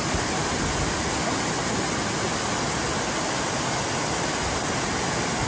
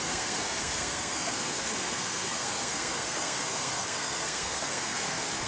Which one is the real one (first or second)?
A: first